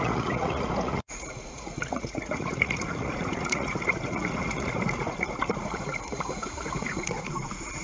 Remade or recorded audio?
remade